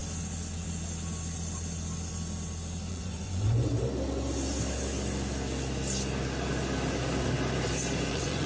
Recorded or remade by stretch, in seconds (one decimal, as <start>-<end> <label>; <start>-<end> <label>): 0.0-2.9 recorded; 2.9-3.7 remade; 3.7-8.1 recorded; 8.1-8.5 remade